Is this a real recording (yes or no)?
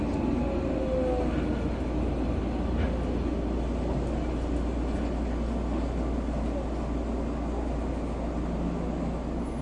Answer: yes